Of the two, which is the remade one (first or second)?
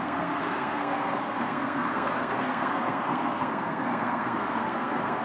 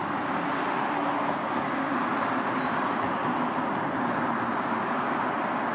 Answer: first